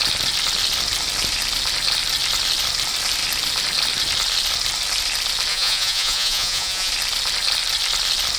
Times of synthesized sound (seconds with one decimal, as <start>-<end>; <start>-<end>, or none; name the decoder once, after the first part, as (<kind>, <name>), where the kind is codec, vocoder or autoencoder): 5.5-6.9 (vocoder, Vocos)